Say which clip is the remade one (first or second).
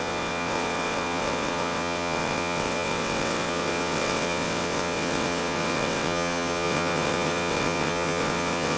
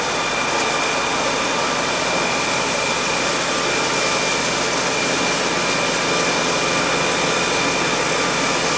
first